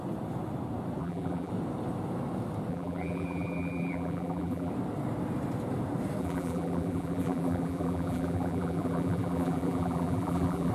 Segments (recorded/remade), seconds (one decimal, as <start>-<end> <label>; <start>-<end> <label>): 0.0-1.0 recorded; 1.0-1.5 remade; 1.5-2.7 recorded; 2.7-4.7 remade; 4.7-6.2 recorded; 6.2-10.7 remade